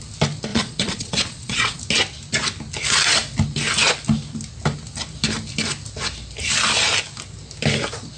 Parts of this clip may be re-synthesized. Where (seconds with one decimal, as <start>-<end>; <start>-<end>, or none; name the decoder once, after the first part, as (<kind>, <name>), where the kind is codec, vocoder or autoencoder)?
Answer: 0.5-1.8 (vocoder, Vocos)